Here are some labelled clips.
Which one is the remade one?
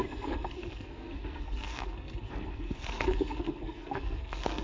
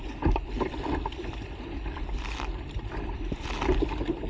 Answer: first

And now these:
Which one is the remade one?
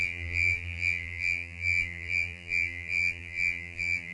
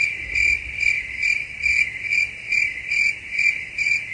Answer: first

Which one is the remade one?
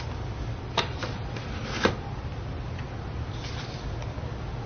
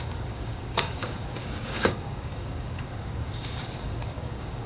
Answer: second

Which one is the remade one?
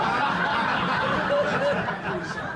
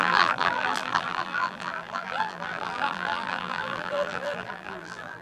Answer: second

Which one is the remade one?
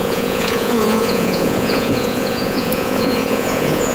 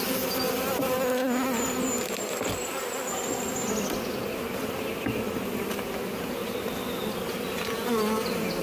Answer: first